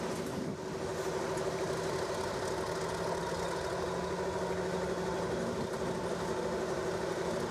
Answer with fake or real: real